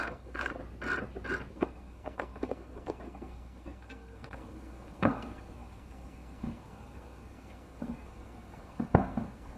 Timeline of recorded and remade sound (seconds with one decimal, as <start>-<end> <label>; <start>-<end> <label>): 0.0-0.6 remade; 0.6-1.5 recorded; 1.5-9.6 remade

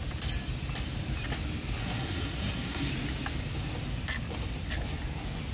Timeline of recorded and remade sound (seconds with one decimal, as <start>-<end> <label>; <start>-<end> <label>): 0.0-1.8 recorded; 1.8-2.9 remade; 2.9-5.5 recorded

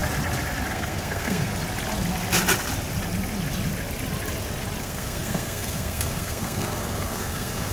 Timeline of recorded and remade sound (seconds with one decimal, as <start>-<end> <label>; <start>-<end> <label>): 0.0-0.7 recorded; 0.7-1.5 remade; 1.5-4.8 recorded; 4.8-7.7 remade